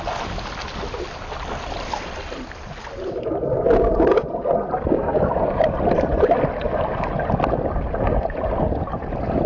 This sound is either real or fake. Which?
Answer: real